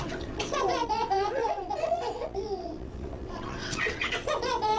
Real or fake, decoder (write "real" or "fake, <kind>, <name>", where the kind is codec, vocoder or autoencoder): fake, vocoder, WaveNeXt